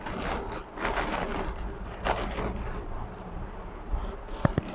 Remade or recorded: recorded